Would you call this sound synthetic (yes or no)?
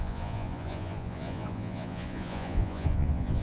yes